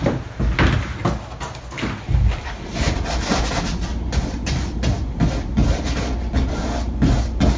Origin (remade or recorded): recorded